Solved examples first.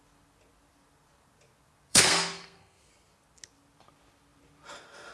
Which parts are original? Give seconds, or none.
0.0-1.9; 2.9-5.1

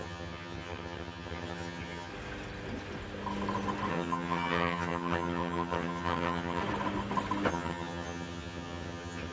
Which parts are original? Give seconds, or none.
2.1-3.9; 6.6-7.5

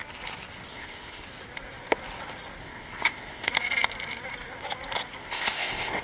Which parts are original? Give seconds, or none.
0.0-0.7; 1.2-2.6; 3.5-5.2